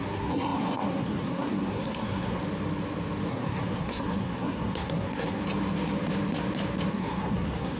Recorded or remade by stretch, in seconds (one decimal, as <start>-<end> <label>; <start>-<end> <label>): 0.0-2.4 remade; 2.4-3.3 recorded; 3.3-5.4 remade; 5.4-6.9 recorded; 6.9-7.8 remade

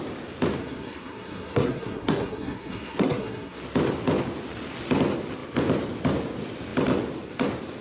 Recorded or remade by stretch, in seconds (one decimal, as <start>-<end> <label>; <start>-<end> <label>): 0.0-0.6 recorded; 0.6-3.6 remade; 3.6-7.8 recorded